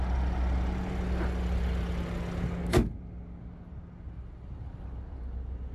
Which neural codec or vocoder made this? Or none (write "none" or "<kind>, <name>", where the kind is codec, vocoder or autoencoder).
none